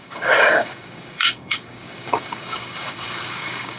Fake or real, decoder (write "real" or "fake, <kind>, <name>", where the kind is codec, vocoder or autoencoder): fake, codec, DAC